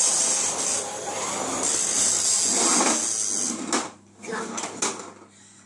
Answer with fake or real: real